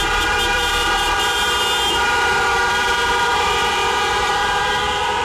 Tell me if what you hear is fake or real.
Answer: fake